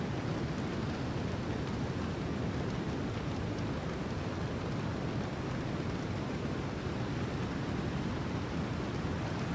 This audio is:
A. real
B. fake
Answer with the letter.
A